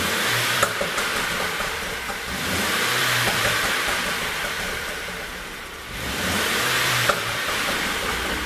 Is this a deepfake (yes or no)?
yes